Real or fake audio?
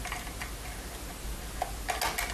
real